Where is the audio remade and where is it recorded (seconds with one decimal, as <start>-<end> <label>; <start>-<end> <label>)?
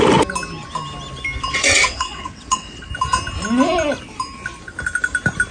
0.0-1.5 recorded; 1.5-2.9 remade; 2.9-5.5 recorded